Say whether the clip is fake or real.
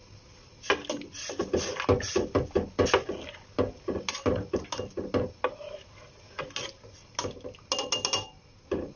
real